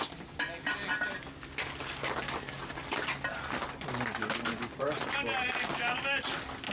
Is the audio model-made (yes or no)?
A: no